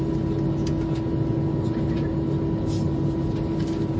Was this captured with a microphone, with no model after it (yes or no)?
yes